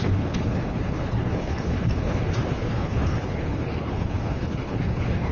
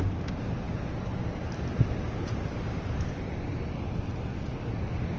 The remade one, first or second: first